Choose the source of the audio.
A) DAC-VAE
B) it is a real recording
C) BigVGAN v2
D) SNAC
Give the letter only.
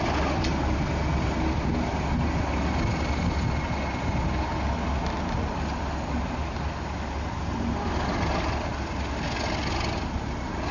B